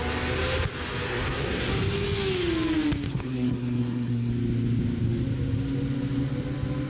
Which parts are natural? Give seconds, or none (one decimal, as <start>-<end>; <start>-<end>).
0.0-1.1; 1.7-3.1; 4.3-6.9

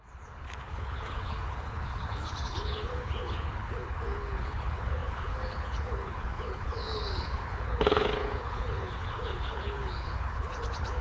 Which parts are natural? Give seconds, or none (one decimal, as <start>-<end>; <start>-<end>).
none

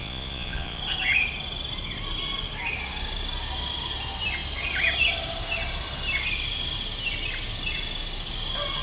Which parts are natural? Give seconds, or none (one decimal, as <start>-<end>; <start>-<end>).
0.8-8.8